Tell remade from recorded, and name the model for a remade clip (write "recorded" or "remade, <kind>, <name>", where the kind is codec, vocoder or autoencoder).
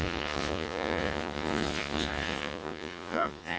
remade, vocoder, Vocos